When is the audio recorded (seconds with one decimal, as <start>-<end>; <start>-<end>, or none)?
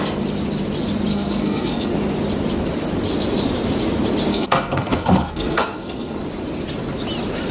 0.0-1.1; 1.9-4.3; 6.2-7.5